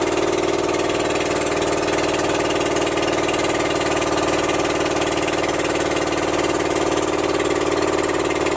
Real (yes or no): yes